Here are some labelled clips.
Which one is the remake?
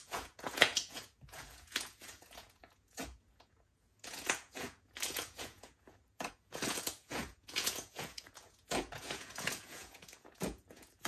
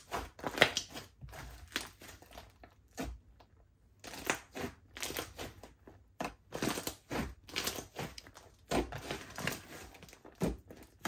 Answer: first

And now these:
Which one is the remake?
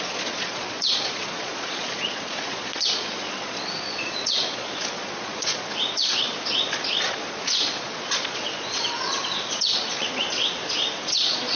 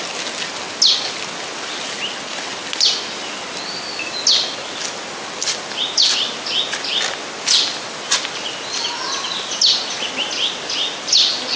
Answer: first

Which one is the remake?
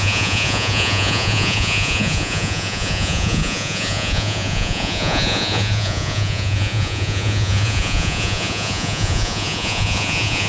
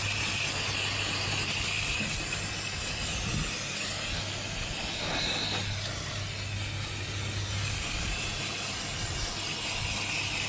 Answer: first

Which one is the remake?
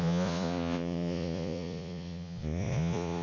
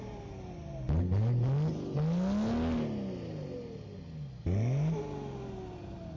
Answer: first